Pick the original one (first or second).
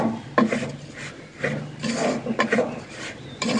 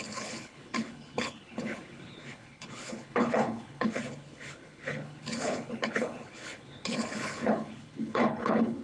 first